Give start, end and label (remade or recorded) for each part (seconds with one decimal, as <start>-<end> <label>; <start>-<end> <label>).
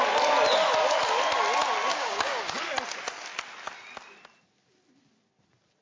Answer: 0.0-1.9 recorded; 1.9-2.5 remade; 2.5-5.8 recorded